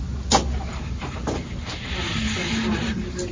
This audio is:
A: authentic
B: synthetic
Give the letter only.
A